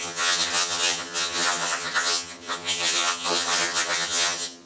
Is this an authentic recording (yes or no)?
no